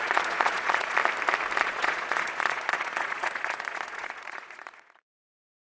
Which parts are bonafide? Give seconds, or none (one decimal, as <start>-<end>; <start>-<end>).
1.0-1.6